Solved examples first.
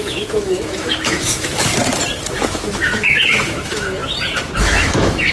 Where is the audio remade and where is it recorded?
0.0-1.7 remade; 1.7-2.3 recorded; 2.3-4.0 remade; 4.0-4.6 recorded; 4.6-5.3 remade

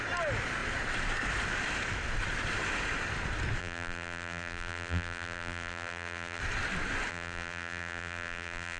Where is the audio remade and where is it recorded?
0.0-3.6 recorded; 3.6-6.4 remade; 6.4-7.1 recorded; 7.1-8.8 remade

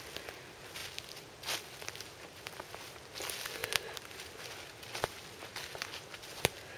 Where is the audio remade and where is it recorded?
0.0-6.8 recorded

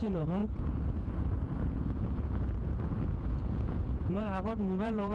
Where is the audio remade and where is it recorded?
0.0-5.1 remade

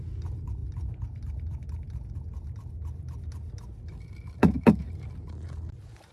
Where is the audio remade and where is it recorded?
0.0-4.4 recorded; 4.4-4.9 remade; 4.9-6.1 recorded